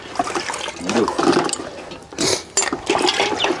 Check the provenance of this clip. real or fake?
real